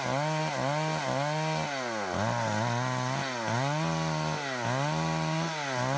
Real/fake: real